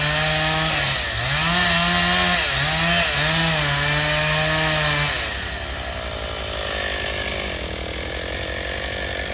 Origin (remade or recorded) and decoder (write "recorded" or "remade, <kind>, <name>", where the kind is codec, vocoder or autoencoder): recorded